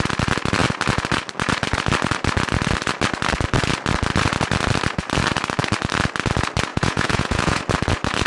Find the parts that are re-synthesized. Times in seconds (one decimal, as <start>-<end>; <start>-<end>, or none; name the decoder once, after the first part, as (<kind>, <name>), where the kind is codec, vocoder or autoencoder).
6.7-7.6 (vocoder, Vocos)